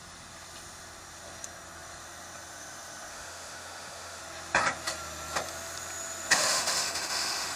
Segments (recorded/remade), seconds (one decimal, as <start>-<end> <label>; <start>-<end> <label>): 0.0-3.1 recorded; 3.1-4.2 remade; 4.2-6.3 recorded; 6.3-7.6 remade